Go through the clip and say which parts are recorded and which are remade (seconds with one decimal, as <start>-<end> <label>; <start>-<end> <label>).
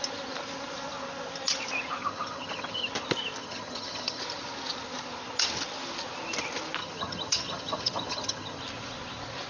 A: 0.0-2.0 recorded; 2.0-2.9 remade; 2.9-3.4 recorded; 3.4-4.2 remade; 4.2-6.8 recorded; 6.8-8.6 remade; 8.6-9.5 recorded